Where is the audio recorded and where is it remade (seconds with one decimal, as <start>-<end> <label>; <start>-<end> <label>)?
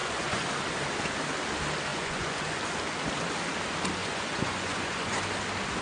0.0-0.5 remade; 0.5-1.9 recorded; 1.9-2.6 remade; 2.6-4.0 recorded; 4.0-5.2 remade; 5.2-5.8 recorded